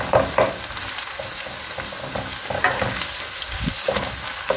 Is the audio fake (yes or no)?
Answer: no